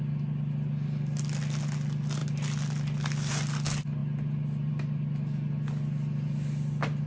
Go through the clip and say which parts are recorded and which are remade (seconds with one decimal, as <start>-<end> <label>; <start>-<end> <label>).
0.0-7.1 recorded